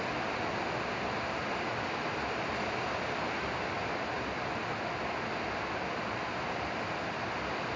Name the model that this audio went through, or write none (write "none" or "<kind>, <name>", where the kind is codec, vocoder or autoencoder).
none